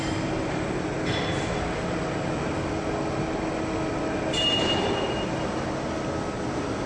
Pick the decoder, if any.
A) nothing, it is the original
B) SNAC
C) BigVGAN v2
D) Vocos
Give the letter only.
A